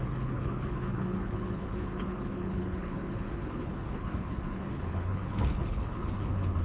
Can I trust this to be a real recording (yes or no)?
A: no